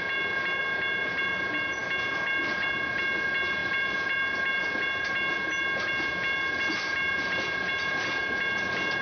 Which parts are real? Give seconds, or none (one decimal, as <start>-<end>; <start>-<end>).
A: 0.0-9.0